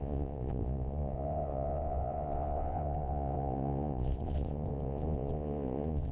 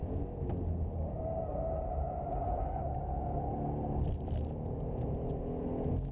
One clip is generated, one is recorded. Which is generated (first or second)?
first